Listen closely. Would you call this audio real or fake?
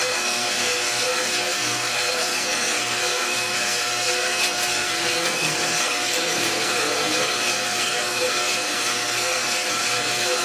fake